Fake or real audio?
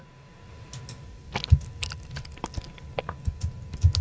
real